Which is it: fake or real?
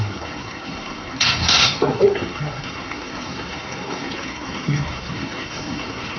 fake